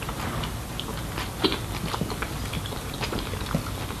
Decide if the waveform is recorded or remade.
recorded